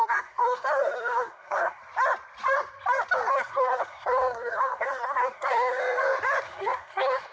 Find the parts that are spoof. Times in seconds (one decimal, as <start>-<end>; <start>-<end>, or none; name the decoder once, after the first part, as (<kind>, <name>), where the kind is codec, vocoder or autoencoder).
0.0-1.8 (codec, SNAC); 3.3-5.8; 6.4-7.3